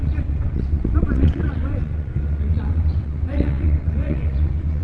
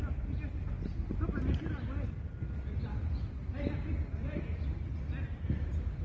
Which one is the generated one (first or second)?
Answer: first